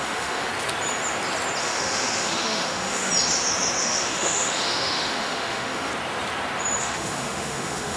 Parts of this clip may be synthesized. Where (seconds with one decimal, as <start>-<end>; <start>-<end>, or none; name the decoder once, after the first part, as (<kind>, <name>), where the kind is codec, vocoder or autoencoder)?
0.0-0.5 (autoencoder, DAC-VAE); 1.6-3.1; 3.8-5.9; 6.8-8.0